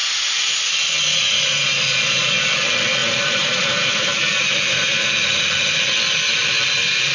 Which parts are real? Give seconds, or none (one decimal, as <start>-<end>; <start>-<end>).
0.0-3.0; 5.2-7.1